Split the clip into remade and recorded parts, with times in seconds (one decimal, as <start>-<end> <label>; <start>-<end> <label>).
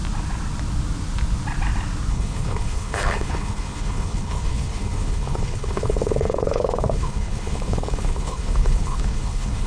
0.0-2.1 recorded; 2.1-9.7 remade